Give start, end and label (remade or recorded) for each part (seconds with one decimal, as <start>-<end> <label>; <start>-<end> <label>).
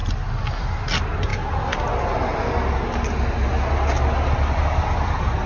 0.0-5.5 recorded